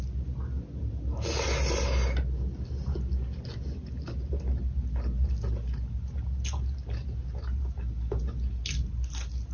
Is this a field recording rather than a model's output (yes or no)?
yes